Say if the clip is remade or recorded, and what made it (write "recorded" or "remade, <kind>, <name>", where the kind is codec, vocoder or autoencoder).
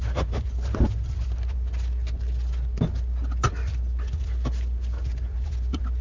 recorded